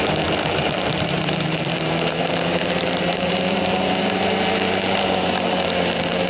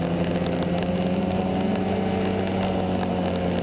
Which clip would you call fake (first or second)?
first